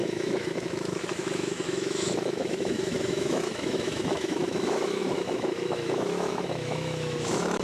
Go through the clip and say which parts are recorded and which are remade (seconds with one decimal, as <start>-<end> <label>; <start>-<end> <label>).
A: 0.0-7.6 remade